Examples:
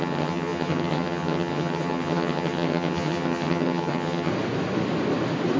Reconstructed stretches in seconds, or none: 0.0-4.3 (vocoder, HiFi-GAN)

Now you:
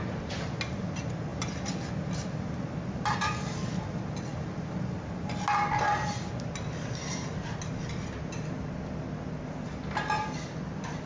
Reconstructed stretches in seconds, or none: none

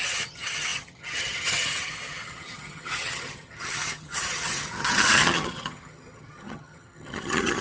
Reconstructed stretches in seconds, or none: 0.0-7.6 (vocoder, HiFi-GAN)

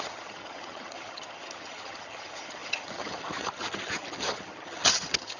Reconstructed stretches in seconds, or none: 0.0-5.4 (vocoder, HiFi-GAN)

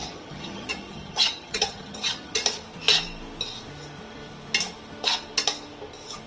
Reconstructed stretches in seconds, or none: 0.0-2.4 (vocoder, HiFi-GAN)